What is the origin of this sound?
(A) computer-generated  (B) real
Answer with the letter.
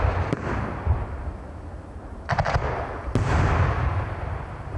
B